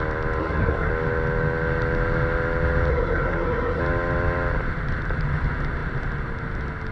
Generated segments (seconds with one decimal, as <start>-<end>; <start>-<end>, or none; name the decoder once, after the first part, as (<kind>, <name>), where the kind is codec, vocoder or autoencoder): 0.4-0.9 (codec, SNAC); 2.9-3.8